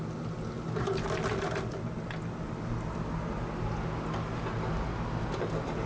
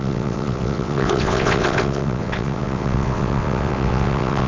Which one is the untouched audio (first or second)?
first